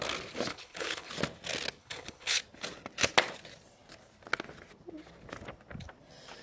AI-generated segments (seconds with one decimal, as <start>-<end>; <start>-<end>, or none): 0.5-1.1; 1.8-2.4